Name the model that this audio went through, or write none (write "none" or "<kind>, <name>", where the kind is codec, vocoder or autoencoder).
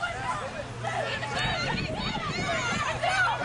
none